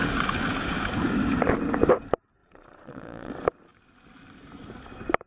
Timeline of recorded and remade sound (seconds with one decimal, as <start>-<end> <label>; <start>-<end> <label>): 0.0-2.4 recorded; 2.4-3.3 remade; 3.3-5.3 recorded